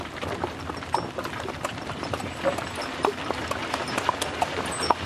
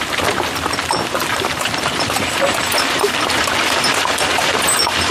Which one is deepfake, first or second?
second